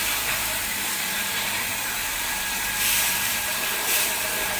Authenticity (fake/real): fake